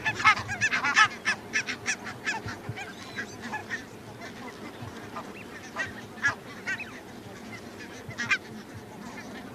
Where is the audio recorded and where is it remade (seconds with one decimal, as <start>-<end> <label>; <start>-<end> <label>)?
0.0-9.5 recorded

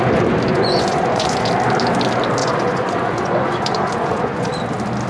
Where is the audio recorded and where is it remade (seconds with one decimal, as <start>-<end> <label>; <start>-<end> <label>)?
0.0-0.5 recorded; 0.5-1.5 remade; 1.5-2.4 recorded; 2.4-4.5 remade; 4.5-5.1 recorded

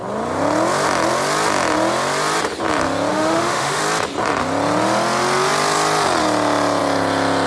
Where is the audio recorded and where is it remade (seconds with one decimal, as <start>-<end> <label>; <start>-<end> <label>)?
0.0-3.1 recorded; 3.1-3.8 remade; 3.8-7.5 recorded

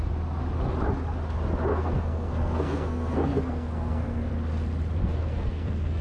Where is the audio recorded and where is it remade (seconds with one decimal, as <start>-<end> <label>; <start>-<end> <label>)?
0.0-1.7 recorded; 1.7-4.3 remade; 4.3-5.0 recorded; 5.0-6.0 remade